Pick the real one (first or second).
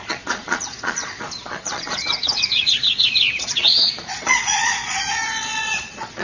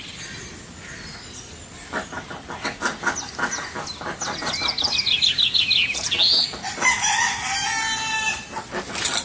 second